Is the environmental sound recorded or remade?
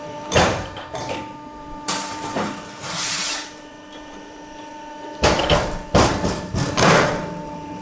remade